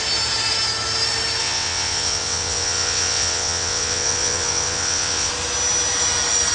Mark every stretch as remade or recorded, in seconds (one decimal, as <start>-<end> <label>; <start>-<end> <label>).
0.0-1.4 recorded; 1.4-5.3 remade; 5.3-6.5 recorded